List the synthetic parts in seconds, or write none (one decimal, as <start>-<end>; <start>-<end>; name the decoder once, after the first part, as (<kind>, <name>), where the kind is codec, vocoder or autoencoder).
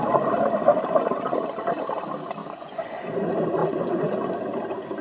2.4-3.0 (vocoder, Vocos); 3.6-4.3